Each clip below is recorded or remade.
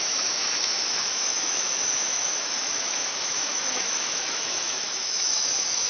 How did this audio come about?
remade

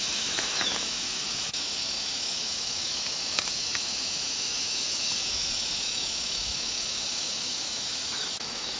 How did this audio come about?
remade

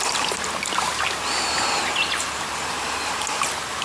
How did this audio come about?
recorded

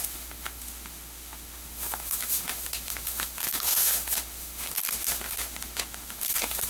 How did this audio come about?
remade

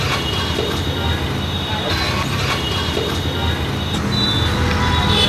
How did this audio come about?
recorded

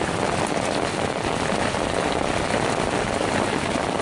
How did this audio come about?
recorded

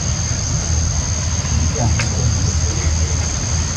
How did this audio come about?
recorded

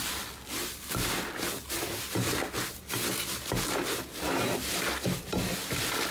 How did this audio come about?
recorded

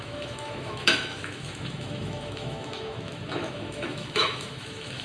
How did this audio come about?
remade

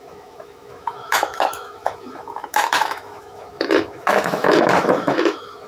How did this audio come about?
remade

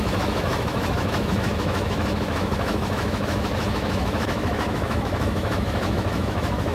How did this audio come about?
remade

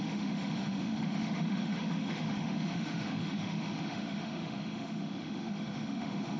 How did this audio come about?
remade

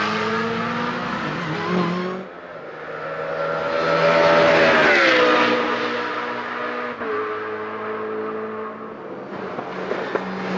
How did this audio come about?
recorded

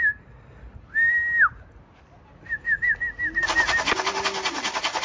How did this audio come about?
recorded